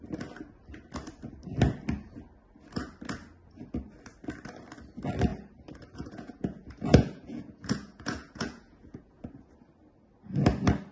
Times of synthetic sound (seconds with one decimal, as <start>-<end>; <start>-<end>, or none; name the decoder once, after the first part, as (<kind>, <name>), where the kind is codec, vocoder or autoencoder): 5.3-9.5 (vocoder, Vocos)